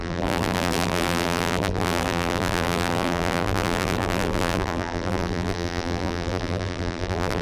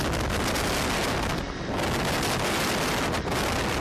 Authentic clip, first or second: second